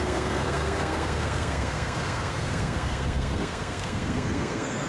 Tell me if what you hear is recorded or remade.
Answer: remade